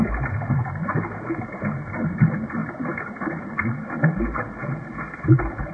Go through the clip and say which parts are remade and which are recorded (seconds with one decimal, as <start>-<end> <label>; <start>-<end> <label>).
0.0-5.7 recorded